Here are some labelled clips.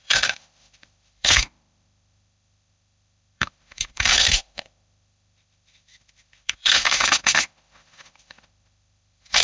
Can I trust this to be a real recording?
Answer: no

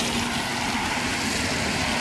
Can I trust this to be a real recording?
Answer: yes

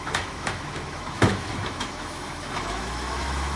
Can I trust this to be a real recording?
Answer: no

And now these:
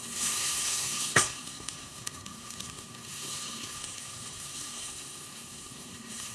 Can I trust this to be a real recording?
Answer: no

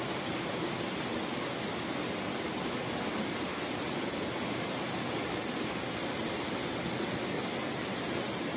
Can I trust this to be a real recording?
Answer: yes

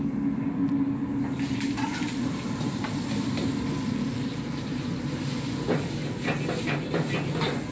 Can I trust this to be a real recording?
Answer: yes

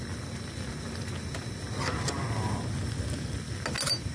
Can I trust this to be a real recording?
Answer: yes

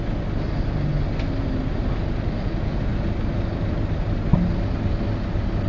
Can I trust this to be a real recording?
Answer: yes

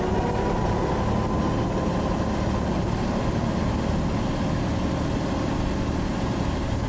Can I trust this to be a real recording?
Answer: yes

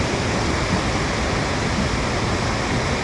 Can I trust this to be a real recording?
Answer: yes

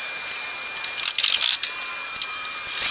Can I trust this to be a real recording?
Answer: yes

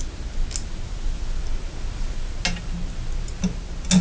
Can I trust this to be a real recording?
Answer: yes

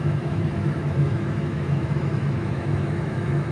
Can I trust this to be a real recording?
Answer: no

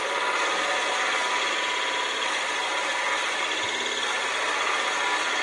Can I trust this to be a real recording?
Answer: yes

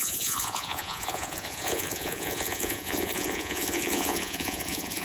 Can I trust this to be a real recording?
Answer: no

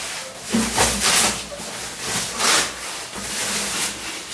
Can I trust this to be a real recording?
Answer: yes